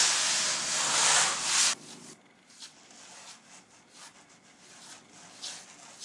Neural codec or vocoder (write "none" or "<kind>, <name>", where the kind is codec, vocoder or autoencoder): none